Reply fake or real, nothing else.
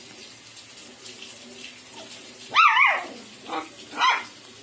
real